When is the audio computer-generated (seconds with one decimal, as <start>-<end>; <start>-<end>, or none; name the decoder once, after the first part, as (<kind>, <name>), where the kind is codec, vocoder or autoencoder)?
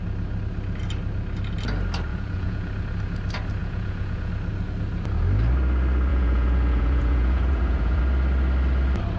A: 2.1-2.7 (vocoder, Vocos); 3.6-4.3; 6.1-8.0